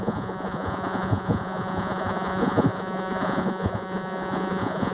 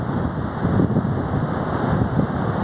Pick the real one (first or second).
second